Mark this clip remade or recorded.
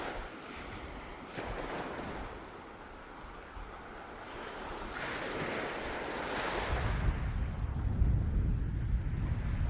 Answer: recorded